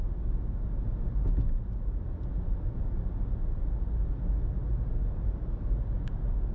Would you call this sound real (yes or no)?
yes